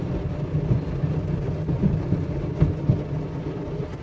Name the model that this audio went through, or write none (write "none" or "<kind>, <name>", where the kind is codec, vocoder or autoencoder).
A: none